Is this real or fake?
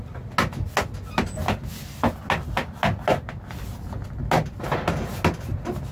real